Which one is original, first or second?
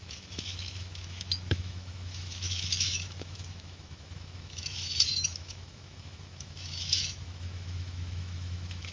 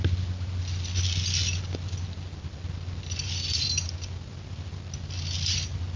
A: second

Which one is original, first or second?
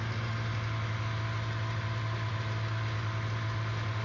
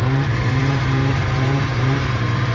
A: first